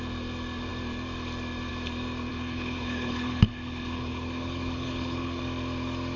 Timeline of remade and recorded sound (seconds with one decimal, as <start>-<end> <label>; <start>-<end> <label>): 0.0-2.3 recorded; 2.3-5.4 remade; 5.4-6.2 recorded